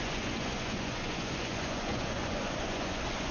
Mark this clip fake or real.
fake